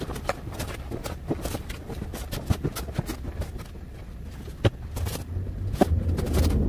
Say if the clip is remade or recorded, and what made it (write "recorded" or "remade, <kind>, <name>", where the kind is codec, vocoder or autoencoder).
recorded